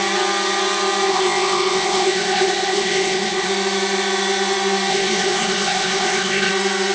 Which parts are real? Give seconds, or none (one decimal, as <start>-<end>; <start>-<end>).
0.0-1.1; 3.5-4.9; 6.5-6.9